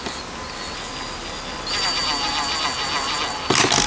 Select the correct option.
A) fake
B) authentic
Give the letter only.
B